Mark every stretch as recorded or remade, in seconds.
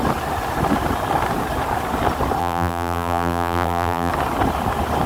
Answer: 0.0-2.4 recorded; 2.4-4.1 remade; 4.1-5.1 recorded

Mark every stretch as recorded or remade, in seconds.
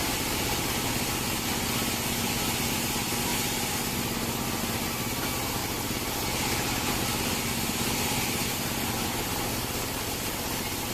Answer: 0.0-10.9 recorded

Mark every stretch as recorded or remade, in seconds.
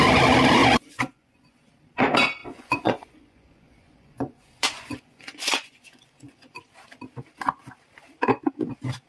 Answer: 0.0-0.6 recorded; 0.6-1.7 remade; 1.7-2.4 recorded; 2.4-6.7 remade; 6.7-9.1 recorded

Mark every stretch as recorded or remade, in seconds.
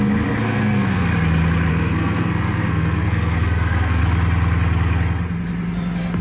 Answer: 0.0-1.1 remade; 1.1-1.7 recorded; 1.7-4.0 remade; 4.0-6.2 recorded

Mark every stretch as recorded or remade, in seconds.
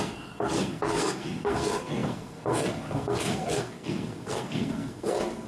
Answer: 0.0-5.5 remade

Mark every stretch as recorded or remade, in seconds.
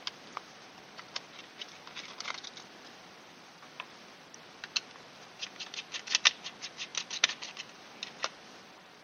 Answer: 0.0-9.0 recorded